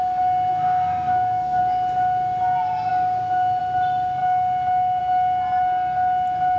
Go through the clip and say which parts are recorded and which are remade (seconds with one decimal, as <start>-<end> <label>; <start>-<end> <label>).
0.0-0.5 recorded; 0.5-1.6 remade; 1.6-6.6 recorded